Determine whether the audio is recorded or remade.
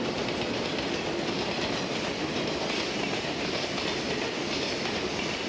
recorded